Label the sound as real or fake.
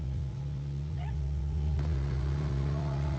fake